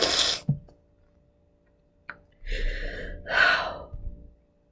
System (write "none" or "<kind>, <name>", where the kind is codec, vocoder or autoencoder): none